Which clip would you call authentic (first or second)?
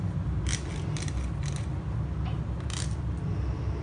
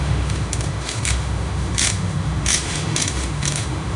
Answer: first